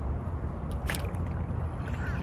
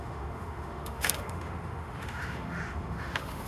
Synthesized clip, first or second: second